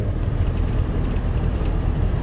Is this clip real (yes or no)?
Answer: no